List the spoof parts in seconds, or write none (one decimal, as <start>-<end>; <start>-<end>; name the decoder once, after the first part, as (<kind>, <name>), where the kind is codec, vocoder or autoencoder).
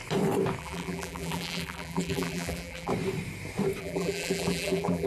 0.6-2.9 (vocoder, BigVGAN v2); 3.8-5.1